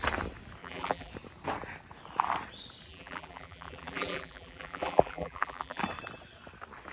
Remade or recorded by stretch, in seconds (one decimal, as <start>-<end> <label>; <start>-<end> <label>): 0.0-0.6 recorded; 0.6-1.1 remade; 1.1-2.9 recorded; 2.9-5.8 remade; 5.8-6.9 recorded